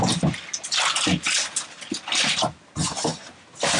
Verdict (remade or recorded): recorded